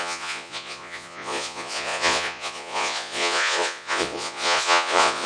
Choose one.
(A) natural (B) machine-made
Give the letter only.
B